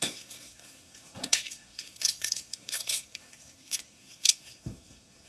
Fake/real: fake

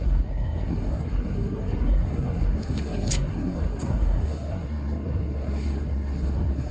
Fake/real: fake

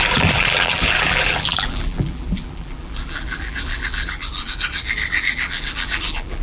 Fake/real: fake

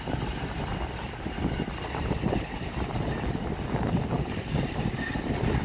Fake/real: real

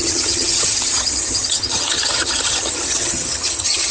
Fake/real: fake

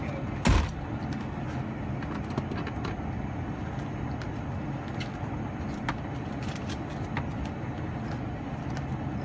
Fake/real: real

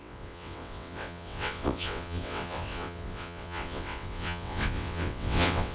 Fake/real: fake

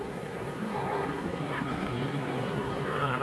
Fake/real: fake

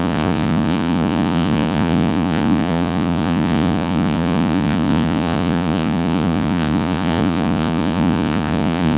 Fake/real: fake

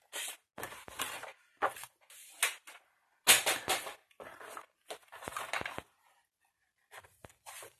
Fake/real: real